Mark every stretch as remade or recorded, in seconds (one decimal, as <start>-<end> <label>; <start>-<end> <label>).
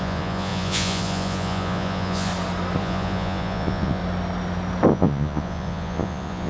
0.0-2.3 remade; 2.3-2.8 recorded; 2.8-4.0 remade; 4.0-4.9 recorded; 4.9-6.5 remade